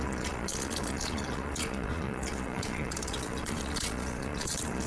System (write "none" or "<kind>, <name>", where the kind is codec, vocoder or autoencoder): vocoder, Vocos